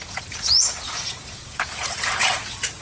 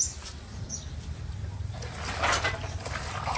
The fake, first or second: first